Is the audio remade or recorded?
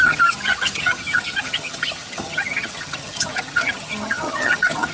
remade